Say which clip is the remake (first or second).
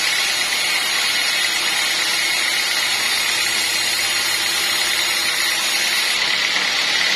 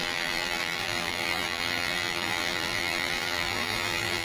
second